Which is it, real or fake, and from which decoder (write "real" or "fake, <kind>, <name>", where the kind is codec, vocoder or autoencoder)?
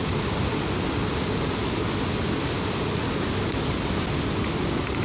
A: real